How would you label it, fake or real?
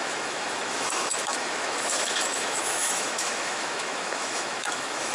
fake